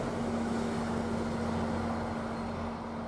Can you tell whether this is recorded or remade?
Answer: recorded